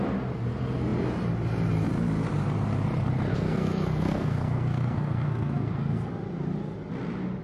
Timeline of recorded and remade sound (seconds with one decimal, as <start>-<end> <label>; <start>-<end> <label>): 0.0-3.3 recorded; 3.3-6.1 remade; 6.1-7.4 recorded